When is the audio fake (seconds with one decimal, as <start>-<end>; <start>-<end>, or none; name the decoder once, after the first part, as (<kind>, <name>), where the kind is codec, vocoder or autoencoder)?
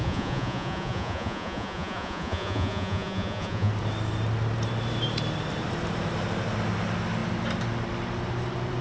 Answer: 0.0-3.7 (vocoder, Vocos)